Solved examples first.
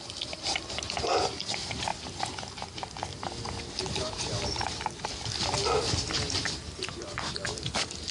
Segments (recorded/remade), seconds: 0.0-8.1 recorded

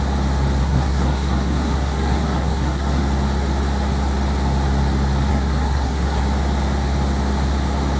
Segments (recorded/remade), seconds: 0.0-0.6 recorded; 0.6-3.0 remade; 3.0-5.3 recorded; 5.3-6.2 remade; 6.2-8.0 recorded

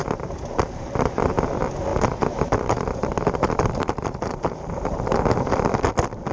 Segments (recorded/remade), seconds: 0.0-1.3 remade; 1.3-1.9 recorded; 1.9-5.7 remade; 5.7-6.3 recorded

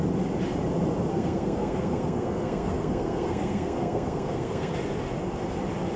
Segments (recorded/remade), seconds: 0.0-1.1 recorded; 1.1-4.7 remade; 4.7-6.0 recorded